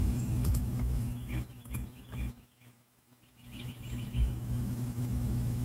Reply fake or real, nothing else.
fake